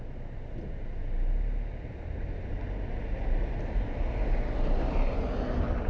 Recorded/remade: recorded